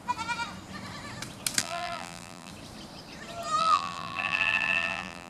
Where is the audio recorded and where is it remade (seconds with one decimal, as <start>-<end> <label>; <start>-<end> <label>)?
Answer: 0.0-1.6 recorded; 1.6-2.5 remade; 2.5-3.6 recorded; 3.6-5.3 remade